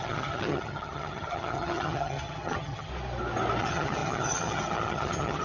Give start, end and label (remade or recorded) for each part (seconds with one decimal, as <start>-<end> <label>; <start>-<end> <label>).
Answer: 0.0-2.9 remade; 2.9-3.6 recorded; 3.6-5.4 remade